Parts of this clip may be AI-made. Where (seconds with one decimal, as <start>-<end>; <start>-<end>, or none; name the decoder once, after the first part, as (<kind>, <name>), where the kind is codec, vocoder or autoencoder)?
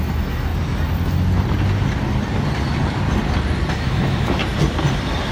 0.0-0.5 (autoencoder, DAC-VAE); 3.7-4.4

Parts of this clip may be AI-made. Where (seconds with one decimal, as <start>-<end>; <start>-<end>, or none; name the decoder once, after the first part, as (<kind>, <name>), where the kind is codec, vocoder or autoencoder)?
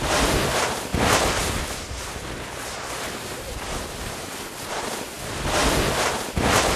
none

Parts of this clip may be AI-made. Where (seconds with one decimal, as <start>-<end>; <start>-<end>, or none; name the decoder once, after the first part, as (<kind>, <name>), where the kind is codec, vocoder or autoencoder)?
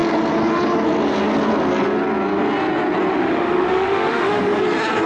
3.1-4.4 (autoencoder, DAC-VAE)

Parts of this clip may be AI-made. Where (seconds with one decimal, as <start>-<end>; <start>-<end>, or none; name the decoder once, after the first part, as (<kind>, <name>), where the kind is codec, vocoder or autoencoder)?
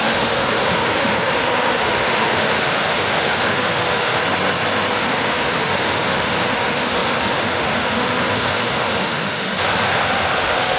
0.0-4.2 (autoencoder, DAC-VAE); 4.9-10.8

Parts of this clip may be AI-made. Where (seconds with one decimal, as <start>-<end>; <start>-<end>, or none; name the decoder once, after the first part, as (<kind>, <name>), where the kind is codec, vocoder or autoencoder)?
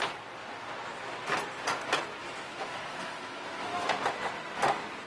2.2-3.9 (autoencoder, DAC-VAE)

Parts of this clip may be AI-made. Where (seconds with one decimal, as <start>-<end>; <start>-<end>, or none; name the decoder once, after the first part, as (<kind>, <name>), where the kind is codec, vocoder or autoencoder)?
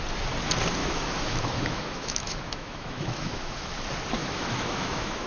0.8-3.7 (autoencoder, DAC-VAE); 4.2-5.3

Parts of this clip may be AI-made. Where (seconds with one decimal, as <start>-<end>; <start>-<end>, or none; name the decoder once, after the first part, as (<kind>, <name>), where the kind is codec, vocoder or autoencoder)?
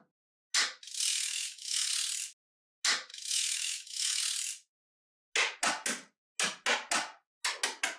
1.1-1.9 (autoencoder, DAC-VAE); 3.1-4.2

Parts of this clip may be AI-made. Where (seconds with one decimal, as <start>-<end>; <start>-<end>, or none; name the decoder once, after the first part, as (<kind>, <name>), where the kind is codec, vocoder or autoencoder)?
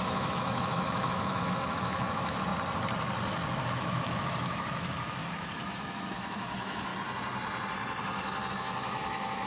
0.0-2.5 (autoencoder, DAC-VAE); 3.7-6.9; 8.5-9.5